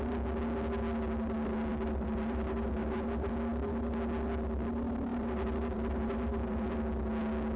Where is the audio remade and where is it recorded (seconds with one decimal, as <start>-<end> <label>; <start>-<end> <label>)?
0.0-1.7 recorded; 1.7-3.3 remade; 3.3-5.1 recorded; 5.1-6.8 remade; 6.8-7.6 recorded